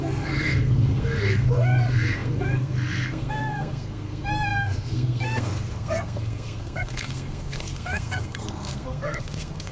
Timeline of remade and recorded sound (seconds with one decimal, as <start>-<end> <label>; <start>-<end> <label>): 0.0-9.7 remade